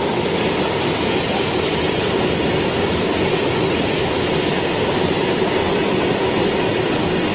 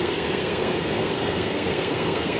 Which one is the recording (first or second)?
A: first